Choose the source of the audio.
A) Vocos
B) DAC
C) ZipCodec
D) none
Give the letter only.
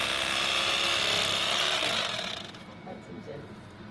D